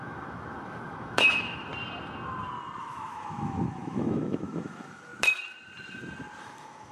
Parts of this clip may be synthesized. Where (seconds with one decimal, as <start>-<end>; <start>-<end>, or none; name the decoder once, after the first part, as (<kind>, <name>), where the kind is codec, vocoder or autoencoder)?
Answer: 0.0-1.7 (autoencoder, DAC-VAE); 2.8-5.1; 6.4-6.9